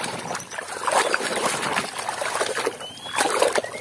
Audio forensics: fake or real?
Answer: fake